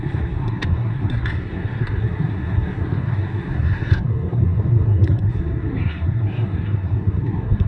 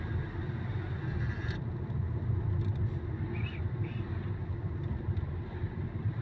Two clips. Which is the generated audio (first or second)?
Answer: first